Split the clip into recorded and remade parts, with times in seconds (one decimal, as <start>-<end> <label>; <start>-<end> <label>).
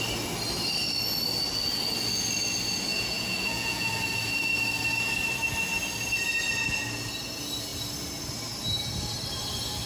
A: 0.0-2.9 recorded; 2.9-3.9 remade; 3.9-9.9 recorded